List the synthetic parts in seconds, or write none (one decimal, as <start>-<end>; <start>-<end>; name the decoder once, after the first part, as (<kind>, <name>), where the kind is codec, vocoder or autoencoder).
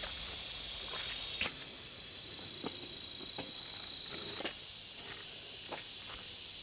0.0-2.5 (vocoder, Vocos)